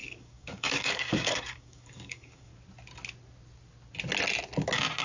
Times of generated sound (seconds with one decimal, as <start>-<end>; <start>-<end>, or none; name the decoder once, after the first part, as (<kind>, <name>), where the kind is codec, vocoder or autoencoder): 0.0-2.5 (codec, DAC)